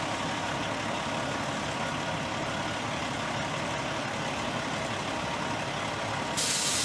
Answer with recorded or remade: recorded